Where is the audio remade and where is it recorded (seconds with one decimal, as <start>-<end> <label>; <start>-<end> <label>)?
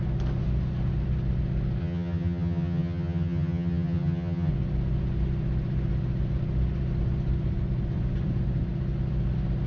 0.0-1.8 recorded; 1.8-4.5 remade; 4.5-9.7 recorded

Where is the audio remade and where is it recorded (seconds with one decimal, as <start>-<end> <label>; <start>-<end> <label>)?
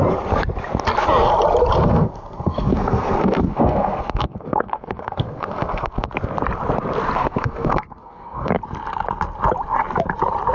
0.0-1.8 recorded; 1.8-6.1 remade; 6.1-7.2 recorded; 7.2-8.5 remade; 8.5-10.5 recorded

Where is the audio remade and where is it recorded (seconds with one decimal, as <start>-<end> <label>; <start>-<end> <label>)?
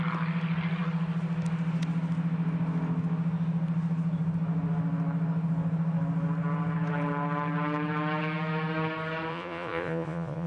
0.0-9.3 recorded; 9.3-10.5 remade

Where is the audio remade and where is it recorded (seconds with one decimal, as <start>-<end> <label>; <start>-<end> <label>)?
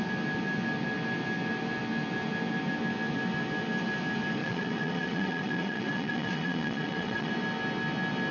0.0-4.4 recorded; 4.4-7.3 remade; 7.3-8.3 recorded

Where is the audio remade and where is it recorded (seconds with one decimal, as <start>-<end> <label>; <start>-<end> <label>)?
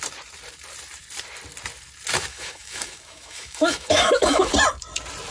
0.0-2.3 recorded; 2.3-4.5 remade; 4.5-5.3 recorded